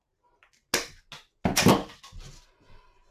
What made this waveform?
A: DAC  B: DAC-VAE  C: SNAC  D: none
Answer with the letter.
D